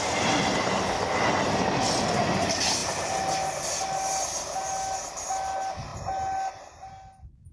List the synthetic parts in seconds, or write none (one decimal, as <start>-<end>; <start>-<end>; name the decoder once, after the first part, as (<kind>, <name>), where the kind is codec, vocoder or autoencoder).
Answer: none